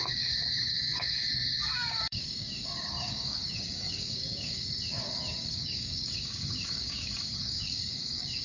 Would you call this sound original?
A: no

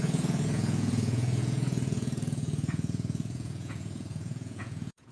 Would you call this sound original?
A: no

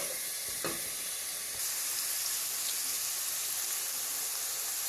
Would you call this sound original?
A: yes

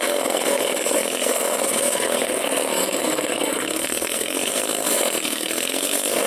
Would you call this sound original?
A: no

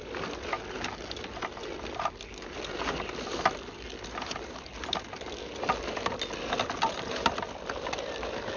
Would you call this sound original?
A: yes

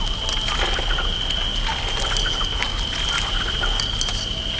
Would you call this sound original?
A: yes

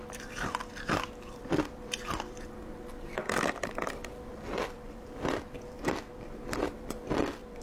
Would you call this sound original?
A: no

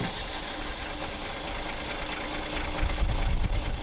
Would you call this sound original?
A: yes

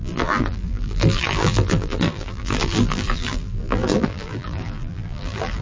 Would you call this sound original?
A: no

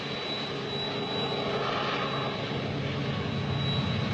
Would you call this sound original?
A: yes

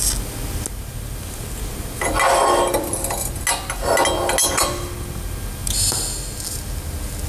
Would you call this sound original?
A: yes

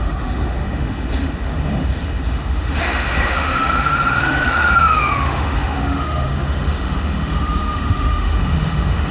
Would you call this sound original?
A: no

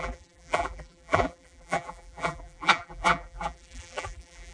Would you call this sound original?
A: no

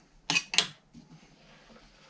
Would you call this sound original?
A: yes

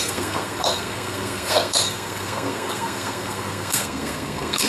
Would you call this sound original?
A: no